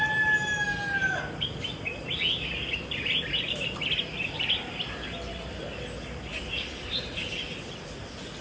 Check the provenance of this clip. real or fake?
real